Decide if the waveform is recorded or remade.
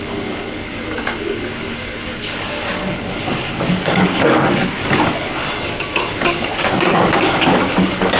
remade